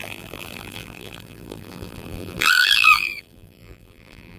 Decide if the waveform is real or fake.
fake